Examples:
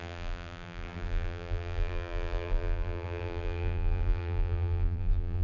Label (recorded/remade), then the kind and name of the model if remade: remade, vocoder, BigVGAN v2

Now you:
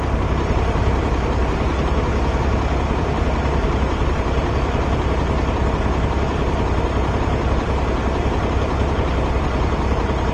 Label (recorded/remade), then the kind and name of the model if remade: remade, vocoder, BigVGAN v2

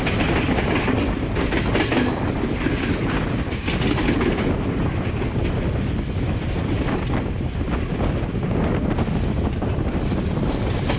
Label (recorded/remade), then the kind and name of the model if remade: recorded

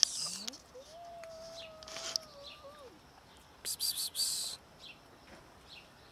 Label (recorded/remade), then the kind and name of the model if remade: recorded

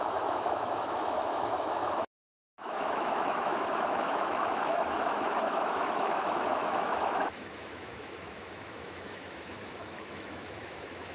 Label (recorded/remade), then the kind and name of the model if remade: remade, autoencoder, DAC-VAE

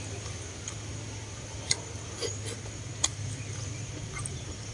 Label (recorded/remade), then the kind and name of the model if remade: recorded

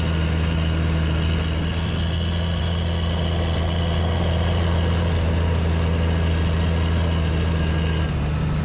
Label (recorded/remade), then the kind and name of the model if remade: recorded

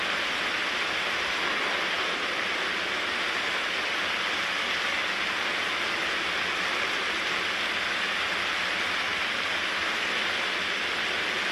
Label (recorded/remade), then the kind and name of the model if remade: recorded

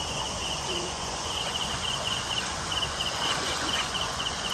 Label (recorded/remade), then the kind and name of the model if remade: remade, vocoder, Vocos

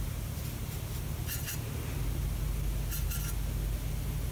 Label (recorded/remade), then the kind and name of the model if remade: recorded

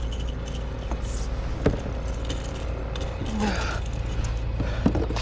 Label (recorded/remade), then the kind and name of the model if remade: recorded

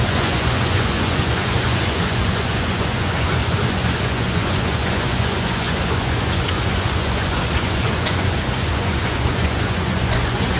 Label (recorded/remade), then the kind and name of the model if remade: remade, vocoder, Vocos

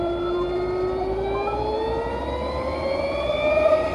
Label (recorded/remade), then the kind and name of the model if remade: recorded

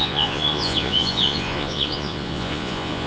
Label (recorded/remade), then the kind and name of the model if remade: remade, vocoder, Vocos